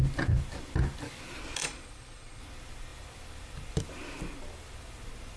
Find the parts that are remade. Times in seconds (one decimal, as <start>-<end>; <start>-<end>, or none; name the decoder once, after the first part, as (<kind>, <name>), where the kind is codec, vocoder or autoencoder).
1.6-2.4 (vocoder, Vocos)